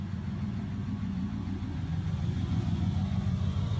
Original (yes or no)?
no